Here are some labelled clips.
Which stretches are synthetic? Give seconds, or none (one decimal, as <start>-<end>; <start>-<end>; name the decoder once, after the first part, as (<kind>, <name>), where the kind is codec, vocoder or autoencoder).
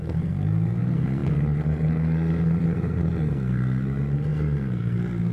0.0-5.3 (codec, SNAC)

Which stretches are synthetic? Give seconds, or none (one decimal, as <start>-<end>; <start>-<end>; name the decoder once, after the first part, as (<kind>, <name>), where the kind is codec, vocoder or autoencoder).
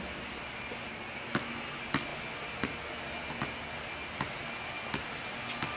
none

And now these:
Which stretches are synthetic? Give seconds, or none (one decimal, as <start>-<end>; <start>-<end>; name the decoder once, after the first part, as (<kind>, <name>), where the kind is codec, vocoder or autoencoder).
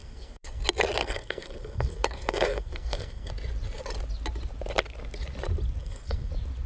0.0-0.6 (codec, SNAC); 1.0-3.3; 5.8-6.3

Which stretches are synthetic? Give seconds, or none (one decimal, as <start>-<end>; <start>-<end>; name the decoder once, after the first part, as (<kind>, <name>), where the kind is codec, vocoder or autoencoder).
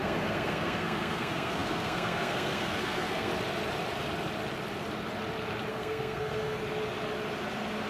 0.0-3.3 (codec, SNAC); 5.7-6.6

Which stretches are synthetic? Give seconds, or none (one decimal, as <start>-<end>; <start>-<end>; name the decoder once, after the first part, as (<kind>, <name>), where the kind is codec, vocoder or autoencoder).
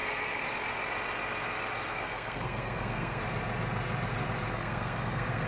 1.9-3.2 (codec, SNAC); 4.5-5.5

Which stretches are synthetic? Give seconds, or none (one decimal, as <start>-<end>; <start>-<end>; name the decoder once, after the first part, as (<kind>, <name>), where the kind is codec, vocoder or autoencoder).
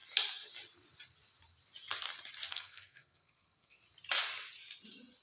2.5-3.8 (codec, SNAC)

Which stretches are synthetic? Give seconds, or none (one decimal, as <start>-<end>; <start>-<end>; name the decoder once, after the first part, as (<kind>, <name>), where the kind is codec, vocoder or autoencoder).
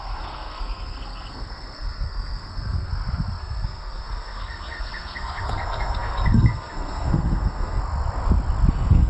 0.0-2.9 (codec, SNAC); 3.4-7.8; 8.7-9.1